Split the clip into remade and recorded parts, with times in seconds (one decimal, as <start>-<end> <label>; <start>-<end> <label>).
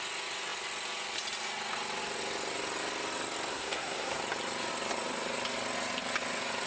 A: 0.0-3.5 recorded; 3.5-4.2 remade; 4.2-6.7 recorded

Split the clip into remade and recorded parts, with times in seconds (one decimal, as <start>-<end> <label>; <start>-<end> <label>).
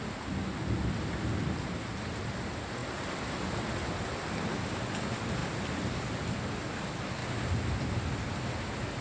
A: 0.0-9.0 recorded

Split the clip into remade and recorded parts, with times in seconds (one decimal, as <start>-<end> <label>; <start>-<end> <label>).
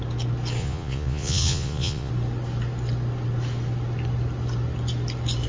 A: 0.0-0.6 recorded; 0.6-2.1 remade; 2.1-5.5 recorded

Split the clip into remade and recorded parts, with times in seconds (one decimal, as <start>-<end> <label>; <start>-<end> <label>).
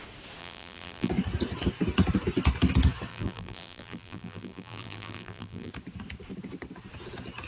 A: 0.0-0.4 recorded; 0.4-1.1 remade; 1.1-3.1 recorded; 3.1-5.7 remade; 5.7-7.5 recorded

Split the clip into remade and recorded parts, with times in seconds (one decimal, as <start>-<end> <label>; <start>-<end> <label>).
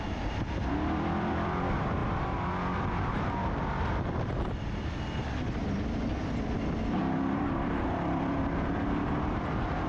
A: 0.0-2.0 remade; 2.0-3.8 recorded; 3.8-5.6 remade; 5.6-7.0 recorded; 7.0-9.9 remade